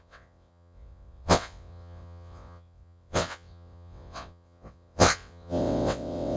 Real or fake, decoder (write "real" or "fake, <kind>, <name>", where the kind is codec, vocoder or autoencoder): fake, vocoder, WaveNeXt